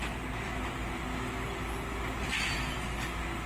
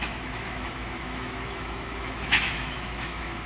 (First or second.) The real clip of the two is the first